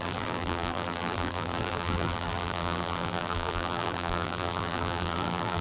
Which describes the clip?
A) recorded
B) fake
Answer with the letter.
B